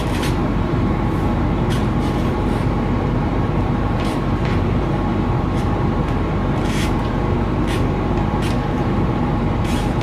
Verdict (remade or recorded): remade